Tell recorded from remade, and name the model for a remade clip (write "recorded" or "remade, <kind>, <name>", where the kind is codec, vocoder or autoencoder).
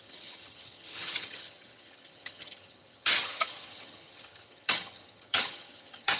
remade, vocoder, HiFi-GAN